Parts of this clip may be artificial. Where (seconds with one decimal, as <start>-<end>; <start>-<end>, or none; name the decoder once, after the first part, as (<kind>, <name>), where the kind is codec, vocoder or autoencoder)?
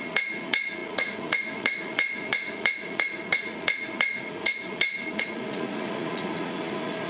0.0-7.1 (vocoder, Vocos)